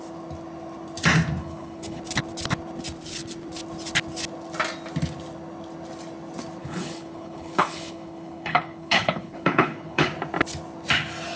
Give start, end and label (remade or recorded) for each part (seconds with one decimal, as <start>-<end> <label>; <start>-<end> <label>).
0.0-1.4 recorded; 1.4-2.0 remade; 2.0-6.6 recorded; 6.6-10.1 remade; 10.1-11.4 recorded